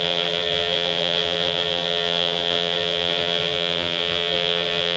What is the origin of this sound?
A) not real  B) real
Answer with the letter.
A